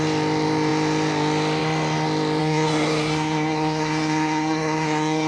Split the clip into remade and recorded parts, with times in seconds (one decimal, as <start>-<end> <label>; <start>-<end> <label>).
0.0-2.4 recorded; 2.4-5.3 remade